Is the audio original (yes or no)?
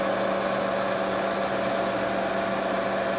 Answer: yes